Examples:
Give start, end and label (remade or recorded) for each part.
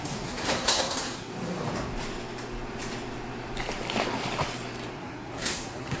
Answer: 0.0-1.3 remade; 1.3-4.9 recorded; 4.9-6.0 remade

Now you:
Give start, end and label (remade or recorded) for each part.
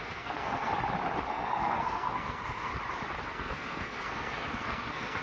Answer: 0.0-0.7 remade; 0.7-1.3 recorded; 1.3-2.7 remade; 2.7-3.3 recorded; 3.3-5.2 remade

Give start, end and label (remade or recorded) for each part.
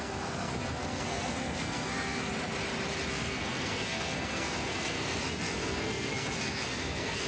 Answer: 0.0-2.3 remade; 2.3-3.1 recorded; 3.1-7.3 remade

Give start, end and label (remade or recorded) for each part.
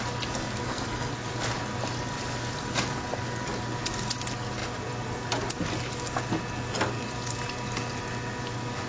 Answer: 0.0-0.6 recorded; 0.6-1.1 remade; 1.1-8.9 recorded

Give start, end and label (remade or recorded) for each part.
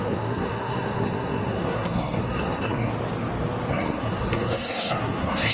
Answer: 0.0-2.9 remade; 2.9-3.7 recorded; 3.7-5.5 remade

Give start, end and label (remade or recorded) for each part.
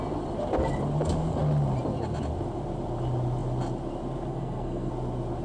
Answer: 0.0-4.3 recorded; 4.3-4.9 remade; 4.9-5.4 recorded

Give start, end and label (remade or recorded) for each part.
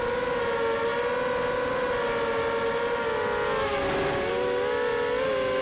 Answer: 0.0-5.6 recorded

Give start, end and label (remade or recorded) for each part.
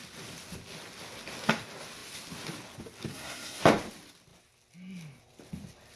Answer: 0.0-3.1 recorded; 3.1-3.6 remade; 3.6-6.0 recorded